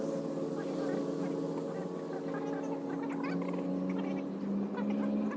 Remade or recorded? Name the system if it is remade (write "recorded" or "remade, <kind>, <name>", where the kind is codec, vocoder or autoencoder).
recorded